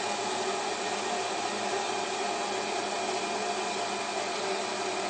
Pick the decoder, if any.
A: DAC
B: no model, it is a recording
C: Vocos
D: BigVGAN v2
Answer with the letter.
B